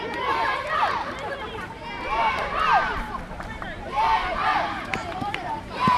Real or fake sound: fake